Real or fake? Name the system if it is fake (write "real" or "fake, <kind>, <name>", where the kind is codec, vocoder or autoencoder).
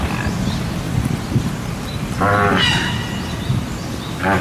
real